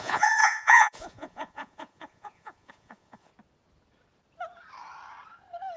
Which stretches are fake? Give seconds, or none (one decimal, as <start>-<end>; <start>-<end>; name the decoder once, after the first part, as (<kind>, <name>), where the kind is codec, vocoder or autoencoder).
0.0-3.3 (vocoder, Vocos)